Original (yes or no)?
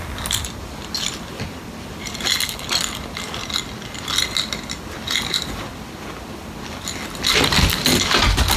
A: yes